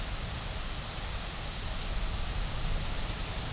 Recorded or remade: recorded